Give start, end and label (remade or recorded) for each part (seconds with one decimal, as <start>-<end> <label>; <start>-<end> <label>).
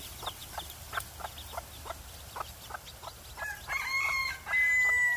0.0-5.2 recorded